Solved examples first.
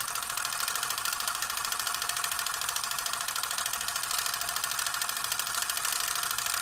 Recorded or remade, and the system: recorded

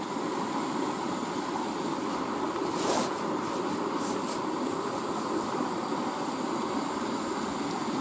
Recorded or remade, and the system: recorded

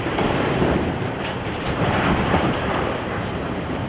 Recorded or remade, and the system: remade, vocoder, BigVGAN v2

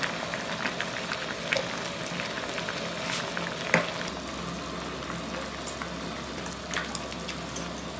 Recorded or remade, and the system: recorded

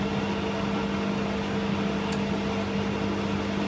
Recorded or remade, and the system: recorded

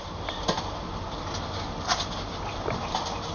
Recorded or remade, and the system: recorded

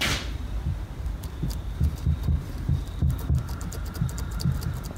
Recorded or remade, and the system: remade, vocoder, BigVGAN v2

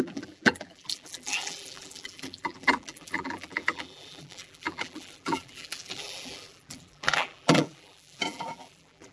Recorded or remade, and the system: remade, vocoder, BigVGAN v2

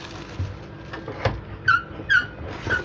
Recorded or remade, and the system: recorded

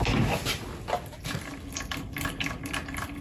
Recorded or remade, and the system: recorded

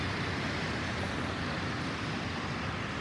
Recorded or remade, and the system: remade, vocoder, BigVGAN v2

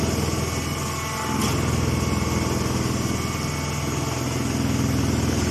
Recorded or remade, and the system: recorded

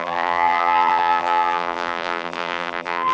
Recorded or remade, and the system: remade, vocoder, BigVGAN v2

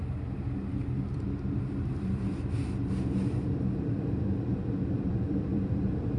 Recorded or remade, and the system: remade, vocoder, BigVGAN v2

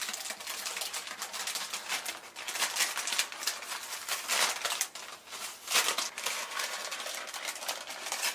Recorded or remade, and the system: recorded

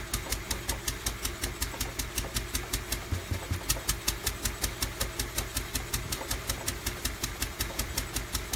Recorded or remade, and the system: recorded